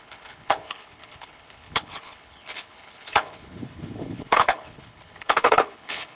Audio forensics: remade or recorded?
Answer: remade